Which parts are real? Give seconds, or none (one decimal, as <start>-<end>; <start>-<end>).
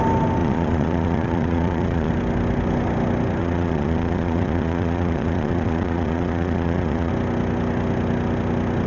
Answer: 0.0-0.4; 2.1-3.4; 7.1-8.9